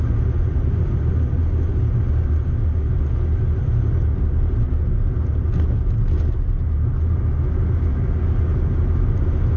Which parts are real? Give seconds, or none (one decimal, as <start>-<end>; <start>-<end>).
0.0-9.6